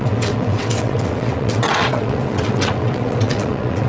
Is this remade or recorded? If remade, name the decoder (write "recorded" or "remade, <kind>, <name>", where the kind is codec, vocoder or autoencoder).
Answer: remade, vocoder, WaveNeXt